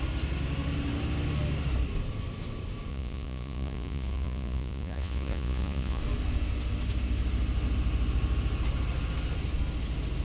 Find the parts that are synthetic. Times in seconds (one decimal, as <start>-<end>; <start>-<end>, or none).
2.9-6.0